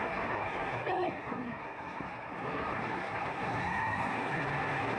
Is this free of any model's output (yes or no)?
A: no